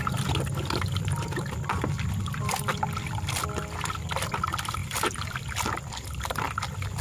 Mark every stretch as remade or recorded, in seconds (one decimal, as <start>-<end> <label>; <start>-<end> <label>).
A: 0.0-4.8 recorded; 4.8-5.3 remade; 5.3-7.0 recorded